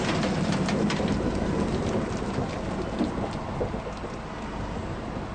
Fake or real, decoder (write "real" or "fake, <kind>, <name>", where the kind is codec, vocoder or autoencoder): real